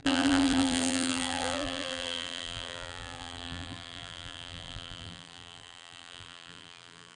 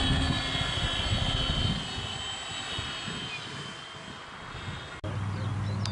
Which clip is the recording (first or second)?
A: second